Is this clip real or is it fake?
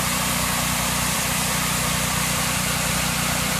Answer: fake